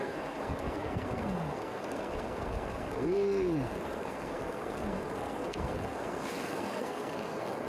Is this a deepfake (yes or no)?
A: yes